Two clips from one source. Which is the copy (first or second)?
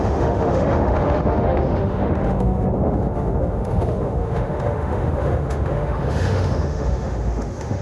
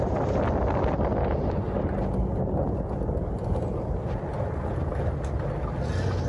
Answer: first